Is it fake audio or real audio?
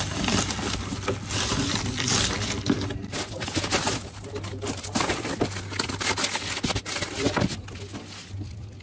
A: real